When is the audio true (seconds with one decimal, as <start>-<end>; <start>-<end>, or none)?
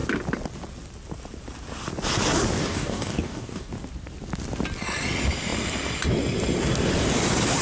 0.0-2.6; 3.7-7.6